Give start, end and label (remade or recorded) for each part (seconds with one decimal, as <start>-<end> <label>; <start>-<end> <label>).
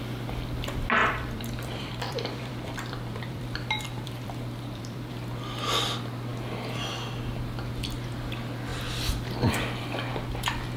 0.0-1.0 recorded; 1.0-5.1 remade; 5.1-10.8 recorded